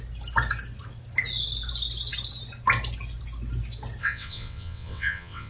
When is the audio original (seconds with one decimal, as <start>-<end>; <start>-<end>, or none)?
0.0-4.0